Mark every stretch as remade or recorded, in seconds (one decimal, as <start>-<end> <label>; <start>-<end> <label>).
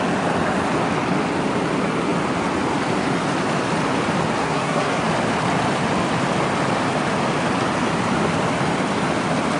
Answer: 0.0-4.4 recorded; 4.4-5.0 remade; 5.0-9.6 recorded